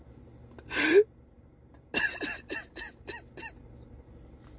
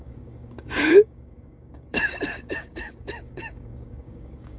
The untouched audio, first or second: first